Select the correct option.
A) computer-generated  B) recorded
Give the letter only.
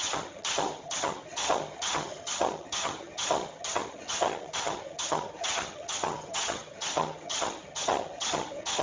A